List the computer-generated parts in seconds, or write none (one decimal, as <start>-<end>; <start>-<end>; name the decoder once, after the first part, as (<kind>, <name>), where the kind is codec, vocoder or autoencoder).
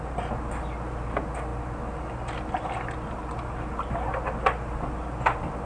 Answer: none